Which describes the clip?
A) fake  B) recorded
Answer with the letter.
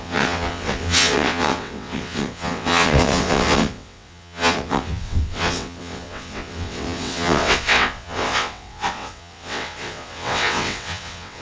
A